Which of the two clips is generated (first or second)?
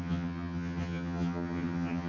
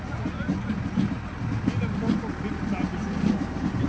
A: first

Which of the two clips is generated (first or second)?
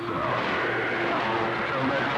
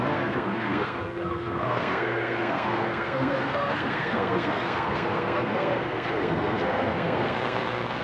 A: second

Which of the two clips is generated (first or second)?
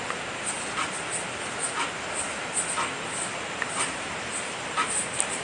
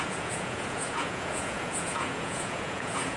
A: second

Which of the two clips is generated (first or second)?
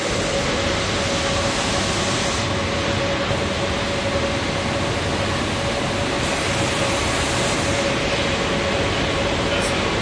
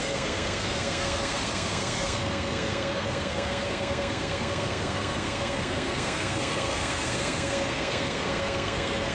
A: second